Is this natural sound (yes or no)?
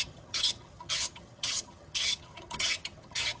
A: no